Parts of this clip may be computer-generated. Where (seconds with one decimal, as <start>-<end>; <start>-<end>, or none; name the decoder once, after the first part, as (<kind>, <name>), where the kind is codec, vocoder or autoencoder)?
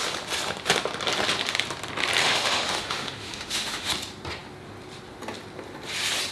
2.2-3.9 (autoencoder, DAC-VAE)